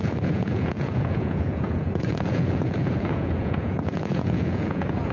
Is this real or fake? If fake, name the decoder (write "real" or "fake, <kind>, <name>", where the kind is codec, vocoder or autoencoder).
fake, vocoder, Vocos